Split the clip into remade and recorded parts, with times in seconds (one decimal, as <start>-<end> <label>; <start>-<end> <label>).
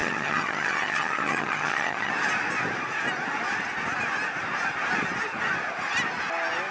0.0-2.1 remade; 2.1-6.7 recorded